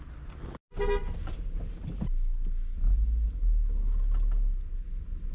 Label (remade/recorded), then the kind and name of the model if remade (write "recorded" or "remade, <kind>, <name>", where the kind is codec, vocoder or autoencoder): recorded